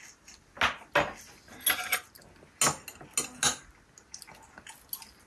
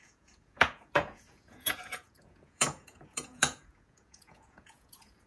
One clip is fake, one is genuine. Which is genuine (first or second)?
first